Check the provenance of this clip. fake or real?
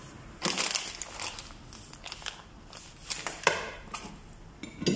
real